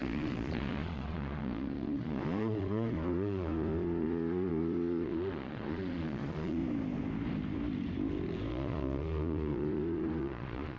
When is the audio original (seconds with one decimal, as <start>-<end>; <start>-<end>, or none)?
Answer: 6.6-8.5